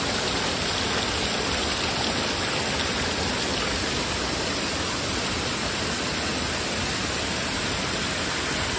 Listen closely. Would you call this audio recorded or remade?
recorded